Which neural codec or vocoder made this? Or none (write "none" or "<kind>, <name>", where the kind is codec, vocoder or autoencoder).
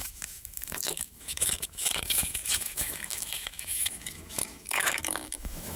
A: autoencoder, DAC-VAE